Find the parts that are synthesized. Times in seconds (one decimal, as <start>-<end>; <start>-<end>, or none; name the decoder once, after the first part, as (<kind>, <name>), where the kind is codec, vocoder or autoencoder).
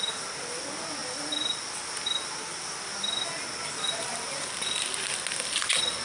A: none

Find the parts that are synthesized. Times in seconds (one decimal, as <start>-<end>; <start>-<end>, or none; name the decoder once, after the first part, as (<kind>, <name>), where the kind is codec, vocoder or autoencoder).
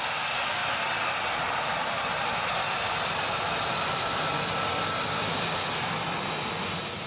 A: none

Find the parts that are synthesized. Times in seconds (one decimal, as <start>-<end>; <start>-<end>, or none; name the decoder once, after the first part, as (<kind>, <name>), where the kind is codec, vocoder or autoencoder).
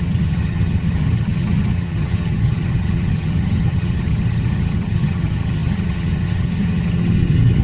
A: 0.0-7.6 (vocoder, HiFi-GAN)